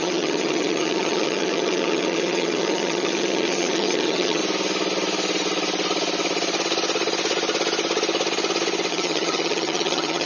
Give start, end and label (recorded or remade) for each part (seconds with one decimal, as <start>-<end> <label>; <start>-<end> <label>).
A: 0.0-4.4 remade; 4.4-8.9 recorded; 8.9-10.3 remade